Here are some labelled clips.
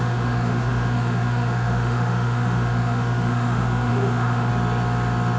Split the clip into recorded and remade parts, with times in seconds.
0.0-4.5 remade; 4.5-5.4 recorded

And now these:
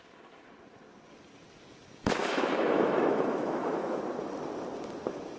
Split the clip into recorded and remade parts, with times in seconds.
0.0-2.2 recorded; 2.2-4.0 remade; 4.0-5.4 recorded

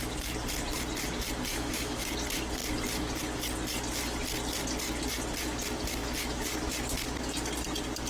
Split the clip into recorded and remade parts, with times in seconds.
0.0-1.5 recorded; 1.5-2.1 remade; 2.1-8.1 recorded

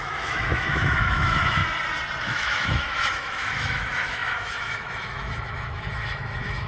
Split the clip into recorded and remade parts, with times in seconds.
0.0-1.6 remade; 1.6-2.2 recorded; 2.2-6.7 remade

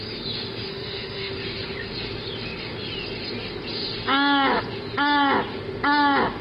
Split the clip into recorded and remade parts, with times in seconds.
0.0-0.7 recorded; 0.7-1.3 remade; 1.3-6.4 recorded

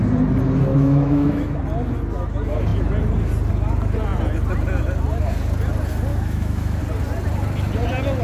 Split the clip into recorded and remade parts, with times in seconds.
0.0-0.7 recorded; 0.7-1.6 remade; 1.6-6.1 recorded; 6.1-6.8 remade; 6.8-8.2 recorded

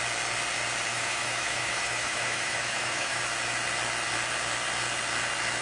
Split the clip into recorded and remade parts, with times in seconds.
0.0-0.9 recorded; 0.9-3.2 remade; 3.2-5.6 recorded

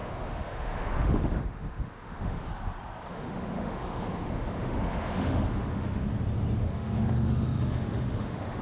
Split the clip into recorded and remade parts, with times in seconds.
0.0-2.5 remade; 2.5-3.1 recorded; 3.1-6.0 remade; 6.0-6.6 recorded; 6.6-8.6 remade